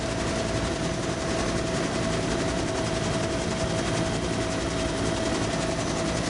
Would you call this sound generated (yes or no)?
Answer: no